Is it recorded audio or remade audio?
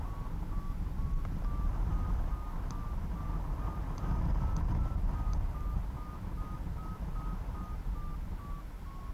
recorded